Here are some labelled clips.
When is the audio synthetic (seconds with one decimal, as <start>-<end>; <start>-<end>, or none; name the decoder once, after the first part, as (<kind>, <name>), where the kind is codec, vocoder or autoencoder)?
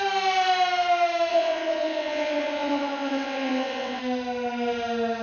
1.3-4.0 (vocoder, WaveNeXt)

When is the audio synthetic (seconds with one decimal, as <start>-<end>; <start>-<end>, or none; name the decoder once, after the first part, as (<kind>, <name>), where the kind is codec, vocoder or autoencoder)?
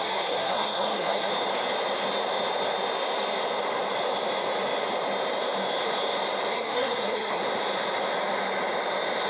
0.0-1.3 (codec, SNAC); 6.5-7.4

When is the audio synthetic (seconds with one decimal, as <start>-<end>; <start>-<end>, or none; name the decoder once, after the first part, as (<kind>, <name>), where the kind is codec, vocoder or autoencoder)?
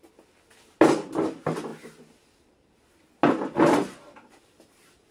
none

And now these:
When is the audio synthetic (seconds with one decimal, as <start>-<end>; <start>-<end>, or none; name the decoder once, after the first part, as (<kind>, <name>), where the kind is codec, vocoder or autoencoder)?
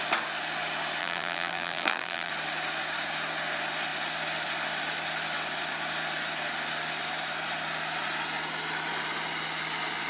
1.0-2.3 (vocoder, BigVGAN v2)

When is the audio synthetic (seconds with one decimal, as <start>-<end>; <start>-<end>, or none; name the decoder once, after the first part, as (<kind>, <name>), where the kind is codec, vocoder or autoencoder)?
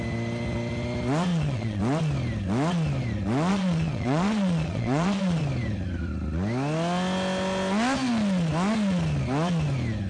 1.3-1.8 (vocoder, Vocos); 3.5-5.4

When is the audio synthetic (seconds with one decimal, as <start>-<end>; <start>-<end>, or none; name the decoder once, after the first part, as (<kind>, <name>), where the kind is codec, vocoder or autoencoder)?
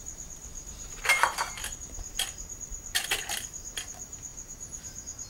0.0-0.5 (vocoder, BigVGAN v2); 1.8-5.3